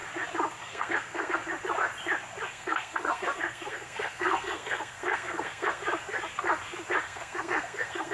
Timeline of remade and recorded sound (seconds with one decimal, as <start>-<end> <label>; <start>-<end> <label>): 0.0-0.6 recorded; 0.6-1.4 remade; 1.4-2.5 recorded; 2.5-5.8 remade; 5.8-7.0 recorded; 7.0-8.1 remade